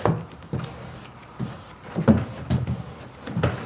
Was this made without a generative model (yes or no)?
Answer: yes